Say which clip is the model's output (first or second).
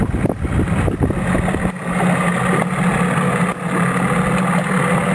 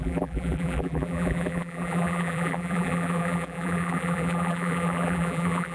second